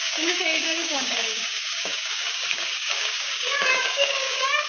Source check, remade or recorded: remade